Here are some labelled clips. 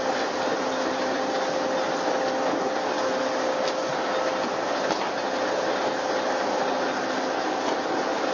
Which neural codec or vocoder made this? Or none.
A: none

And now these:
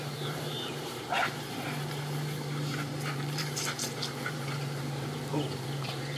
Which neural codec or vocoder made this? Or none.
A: vocoder, BigVGAN v2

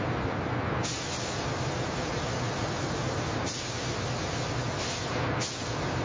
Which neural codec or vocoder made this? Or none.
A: none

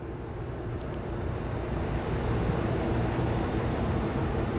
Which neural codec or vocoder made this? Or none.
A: vocoder, BigVGAN v2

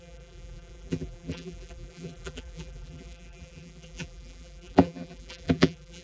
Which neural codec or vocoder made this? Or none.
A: vocoder, BigVGAN v2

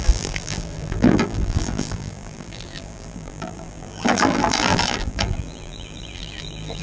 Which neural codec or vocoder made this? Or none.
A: vocoder, BigVGAN v2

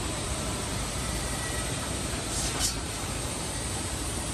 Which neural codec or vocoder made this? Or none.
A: vocoder, BigVGAN v2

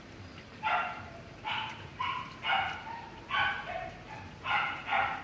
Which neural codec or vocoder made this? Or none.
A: none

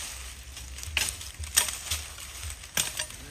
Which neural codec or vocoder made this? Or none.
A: none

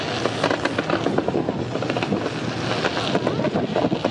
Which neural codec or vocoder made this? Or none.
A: none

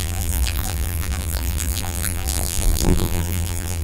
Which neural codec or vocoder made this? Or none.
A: vocoder, BigVGAN v2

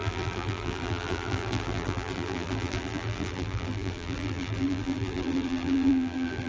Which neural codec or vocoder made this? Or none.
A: vocoder, BigVGAN v2